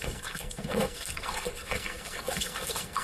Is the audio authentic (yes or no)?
no